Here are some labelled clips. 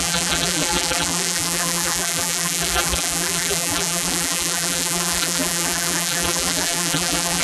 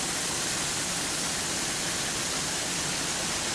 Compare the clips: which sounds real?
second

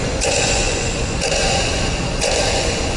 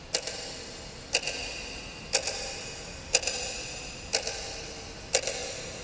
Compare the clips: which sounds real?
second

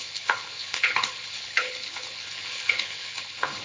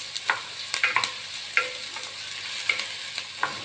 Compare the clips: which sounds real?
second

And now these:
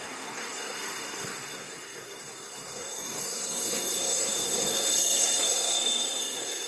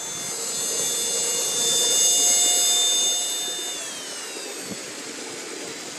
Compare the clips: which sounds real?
second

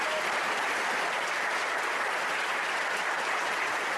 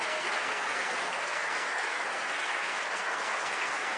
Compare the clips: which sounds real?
first